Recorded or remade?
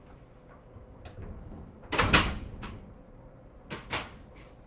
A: recorded